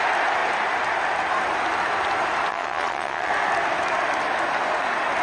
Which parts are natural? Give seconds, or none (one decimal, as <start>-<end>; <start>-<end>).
0.0-2.5; 3.3-5.2